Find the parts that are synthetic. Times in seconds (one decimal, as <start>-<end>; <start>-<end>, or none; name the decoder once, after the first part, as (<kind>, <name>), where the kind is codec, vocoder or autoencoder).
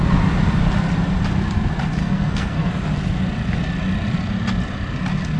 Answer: 2.0-2.7 (codec, SNAC)